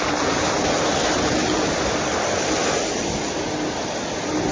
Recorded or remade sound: recorded